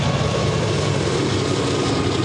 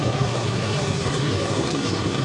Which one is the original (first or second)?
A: first